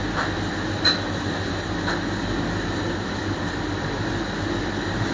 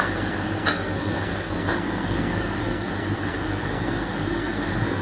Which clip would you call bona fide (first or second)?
first